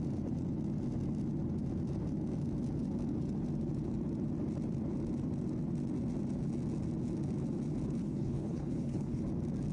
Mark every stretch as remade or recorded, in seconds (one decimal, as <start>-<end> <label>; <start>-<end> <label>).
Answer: 0.0-8.0 recorded; 8.0-9.2 remade; 9.2-9.7 recorded